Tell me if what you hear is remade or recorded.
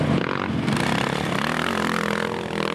recorded